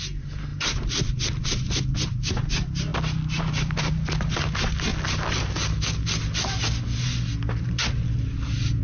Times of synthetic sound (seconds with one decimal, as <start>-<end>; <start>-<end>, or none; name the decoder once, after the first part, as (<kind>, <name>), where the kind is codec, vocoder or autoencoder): 0.0-2.9 (vocoder, BigVGAN v2); 3.4-4.9; 7.6-8.8

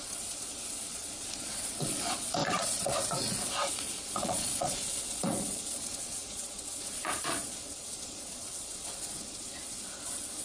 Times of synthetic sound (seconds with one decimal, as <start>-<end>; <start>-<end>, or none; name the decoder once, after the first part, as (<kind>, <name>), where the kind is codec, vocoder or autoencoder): 0.0-10.4 (vocoder, Vocos)

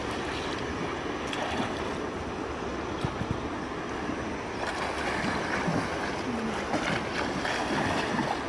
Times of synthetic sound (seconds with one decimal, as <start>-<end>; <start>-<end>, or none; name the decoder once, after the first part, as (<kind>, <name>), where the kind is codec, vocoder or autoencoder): none

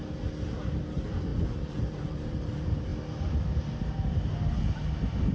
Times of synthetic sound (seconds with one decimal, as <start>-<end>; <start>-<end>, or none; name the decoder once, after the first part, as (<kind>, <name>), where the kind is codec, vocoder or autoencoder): 0.8-2.9 (vocoder, BigVGAN v2)

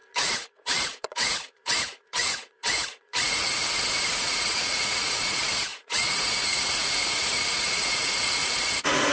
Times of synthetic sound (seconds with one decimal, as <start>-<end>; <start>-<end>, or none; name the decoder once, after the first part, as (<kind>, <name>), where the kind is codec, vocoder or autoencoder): 0.0-3.5 (vocoder, Vocos); 4.1-9.1

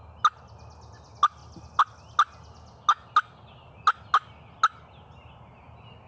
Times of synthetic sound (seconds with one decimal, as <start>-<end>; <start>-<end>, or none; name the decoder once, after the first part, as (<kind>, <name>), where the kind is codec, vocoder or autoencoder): none